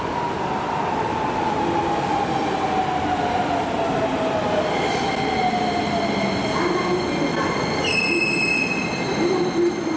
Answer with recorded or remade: recorded